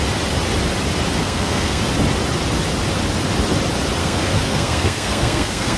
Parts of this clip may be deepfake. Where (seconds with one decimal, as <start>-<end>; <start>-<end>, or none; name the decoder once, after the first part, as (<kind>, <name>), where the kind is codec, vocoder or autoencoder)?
1.2-1.8 (codec, SNAC); 4.0-5.8